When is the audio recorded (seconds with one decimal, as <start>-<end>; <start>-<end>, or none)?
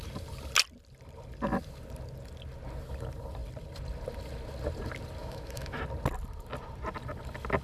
0.0-5.2; 5.8-7.6